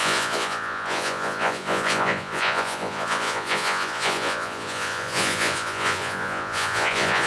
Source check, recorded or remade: remade